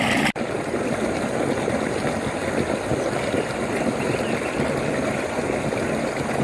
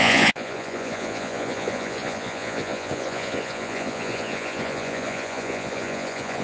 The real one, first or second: first